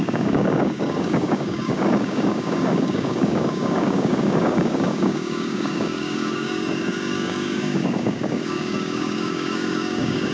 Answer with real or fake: fake